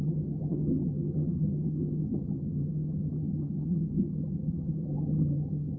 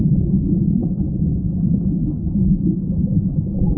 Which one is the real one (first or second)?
second